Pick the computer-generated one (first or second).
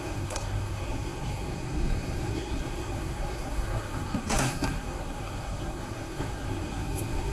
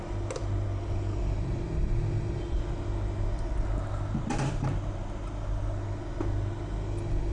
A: first